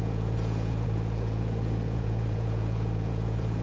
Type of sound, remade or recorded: remade